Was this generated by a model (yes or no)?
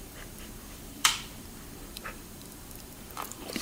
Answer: yes